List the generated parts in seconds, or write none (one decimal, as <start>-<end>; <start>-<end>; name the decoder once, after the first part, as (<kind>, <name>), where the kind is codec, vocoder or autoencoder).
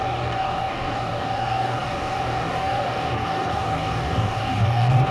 0.0-5.1 (codec, DAC)